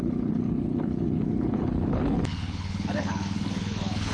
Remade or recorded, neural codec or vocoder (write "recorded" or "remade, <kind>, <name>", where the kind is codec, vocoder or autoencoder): remade, codec, HILCodec